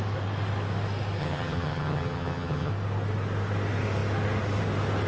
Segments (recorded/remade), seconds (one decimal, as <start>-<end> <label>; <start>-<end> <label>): 0.0-1.2 recorded; 1.2-2.7 remade; 2.7-5.1 recorded

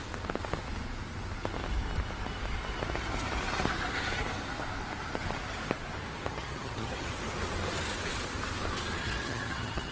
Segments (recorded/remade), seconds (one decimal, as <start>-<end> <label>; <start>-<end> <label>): 0.0-6.3 recorded; 6.3-7.1 remade; 7.1-9.0 recorded; 9.0-9.9 remade

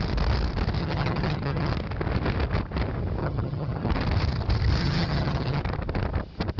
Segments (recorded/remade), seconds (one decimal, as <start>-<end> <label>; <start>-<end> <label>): 0.0-0.8 recorded; 0.8-1.7 remade; 1.7-3.2 recorded; 3.2-3.9 remade; 3.9-4.8 recorded; 4.8-5.6 remade; 5.6-6.6 recorded